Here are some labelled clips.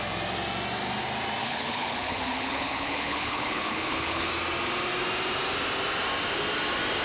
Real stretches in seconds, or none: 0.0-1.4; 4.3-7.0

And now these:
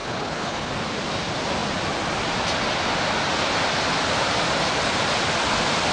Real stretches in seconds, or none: 0.7-5.9

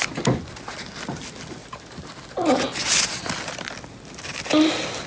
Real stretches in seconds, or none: 0.0-5.1

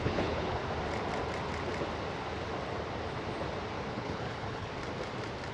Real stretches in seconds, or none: 0.6-3.9; 4.7-5.5

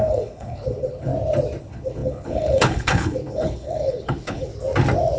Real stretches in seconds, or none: 1.1-1.6; 4.5-5.2

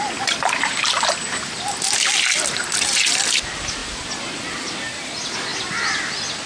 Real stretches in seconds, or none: 0.0-6.5